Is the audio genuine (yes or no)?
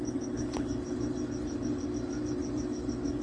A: yes